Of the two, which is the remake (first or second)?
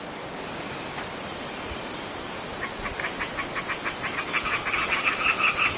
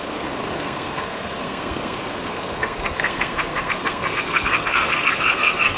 second